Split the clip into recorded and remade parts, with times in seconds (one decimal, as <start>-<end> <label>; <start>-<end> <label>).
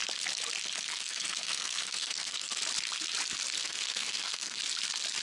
0.0-0.9 recorded; 0.9-2.6 remade; 2.6-3.6 recorded; 3.6-4.6 remade; 4.6-5.2 recorded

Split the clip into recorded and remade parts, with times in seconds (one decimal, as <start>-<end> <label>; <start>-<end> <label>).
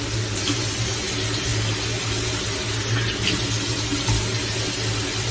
0.0-5.3 recorded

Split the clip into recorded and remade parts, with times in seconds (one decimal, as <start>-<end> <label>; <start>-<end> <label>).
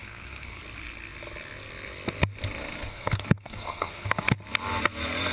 0.0-0.6 remade; 0.6-2.9 recorded; 2.9-4.1 remade; 4.1-5.3 recorded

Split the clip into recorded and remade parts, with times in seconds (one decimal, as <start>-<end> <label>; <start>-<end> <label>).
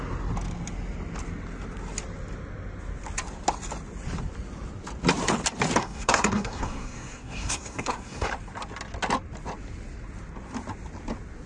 0.0-5.8 recorded; 5.8-8.3 remade; 8.3-11.5 recorded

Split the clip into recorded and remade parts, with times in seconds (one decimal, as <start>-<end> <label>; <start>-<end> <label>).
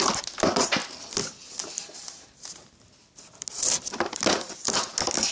0.0-5.3 recorded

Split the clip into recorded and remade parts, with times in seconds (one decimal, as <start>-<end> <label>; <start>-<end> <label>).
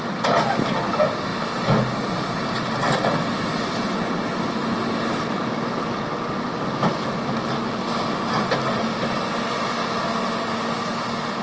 0.0-11.4 recorded